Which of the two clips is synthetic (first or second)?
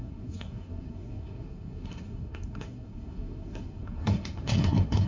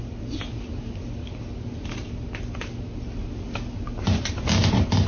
first